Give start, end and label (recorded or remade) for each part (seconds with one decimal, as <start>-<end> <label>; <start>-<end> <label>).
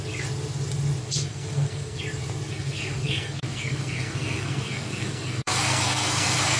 0.0-1.0 recorded; 1.0-2.0 remade; 2.0-2.5 recorded; 2.5-6.6 remade